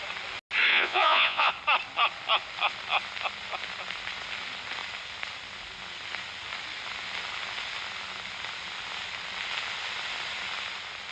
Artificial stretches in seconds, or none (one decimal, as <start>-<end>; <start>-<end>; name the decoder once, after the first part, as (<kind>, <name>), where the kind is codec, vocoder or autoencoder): 0.7-1.5 (vocoder, Vocos)